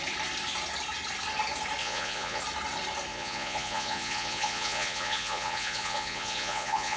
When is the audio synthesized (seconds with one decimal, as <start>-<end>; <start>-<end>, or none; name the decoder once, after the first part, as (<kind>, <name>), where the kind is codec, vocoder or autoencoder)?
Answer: 1.8-2.4 (vocoder, Vocos); 3.1-7.0